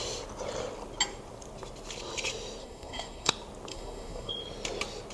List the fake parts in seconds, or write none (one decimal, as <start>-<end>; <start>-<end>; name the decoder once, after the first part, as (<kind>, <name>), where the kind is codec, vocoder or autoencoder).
2.6-3.3 (codec, SNAC); 3.7-4.3